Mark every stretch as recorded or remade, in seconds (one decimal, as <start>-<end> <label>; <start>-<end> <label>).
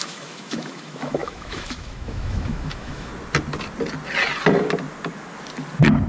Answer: 0.0-3.1 remade; 3.1-6.1 recorded